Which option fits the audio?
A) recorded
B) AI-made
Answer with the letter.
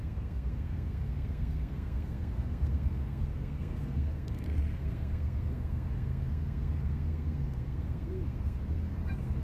B